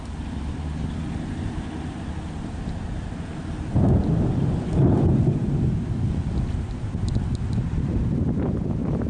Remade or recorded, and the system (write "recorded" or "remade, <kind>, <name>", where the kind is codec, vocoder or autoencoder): recorded